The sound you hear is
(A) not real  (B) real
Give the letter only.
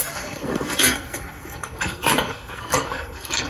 A